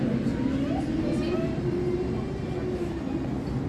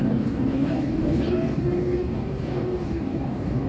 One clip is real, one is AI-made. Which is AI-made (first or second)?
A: second